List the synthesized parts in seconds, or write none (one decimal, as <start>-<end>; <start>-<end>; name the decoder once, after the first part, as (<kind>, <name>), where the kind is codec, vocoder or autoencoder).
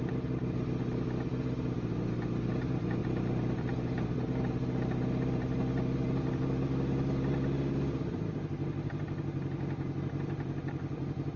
none